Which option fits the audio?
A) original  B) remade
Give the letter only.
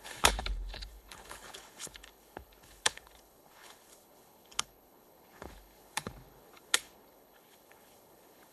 B